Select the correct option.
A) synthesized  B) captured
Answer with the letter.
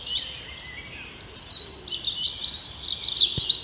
B